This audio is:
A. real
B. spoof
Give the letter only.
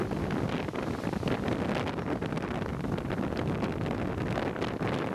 A